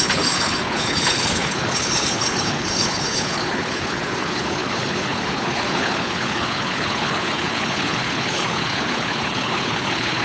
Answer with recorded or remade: remade